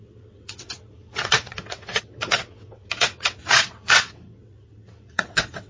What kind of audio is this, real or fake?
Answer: fake